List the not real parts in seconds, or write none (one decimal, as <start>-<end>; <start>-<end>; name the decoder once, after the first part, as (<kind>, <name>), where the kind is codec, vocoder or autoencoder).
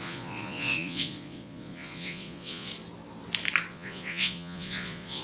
0.0-2.7 (vocoder, Vocos); 3.7-5.2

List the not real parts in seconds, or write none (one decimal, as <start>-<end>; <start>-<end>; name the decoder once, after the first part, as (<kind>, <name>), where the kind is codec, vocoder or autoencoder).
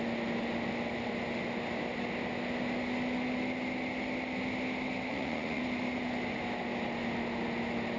5.1-5.6 (vocoder, Vocos)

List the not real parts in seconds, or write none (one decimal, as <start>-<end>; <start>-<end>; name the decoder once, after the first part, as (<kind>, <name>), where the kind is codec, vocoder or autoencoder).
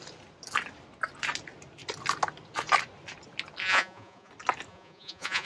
3.6-4.3 (vocoder, Vocos); 4.7-5.5